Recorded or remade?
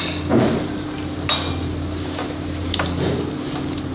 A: recorded